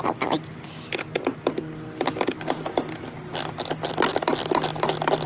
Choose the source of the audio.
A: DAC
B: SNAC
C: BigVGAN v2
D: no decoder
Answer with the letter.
D